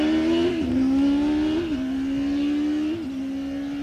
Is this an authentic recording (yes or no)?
yes